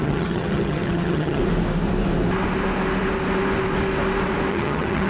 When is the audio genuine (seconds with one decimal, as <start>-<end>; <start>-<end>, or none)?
1.4-4.5